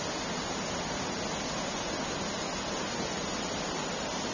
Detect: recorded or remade recorded